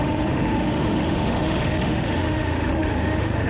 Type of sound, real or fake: fake